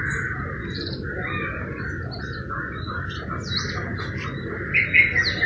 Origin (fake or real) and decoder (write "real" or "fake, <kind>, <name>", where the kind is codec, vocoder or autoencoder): real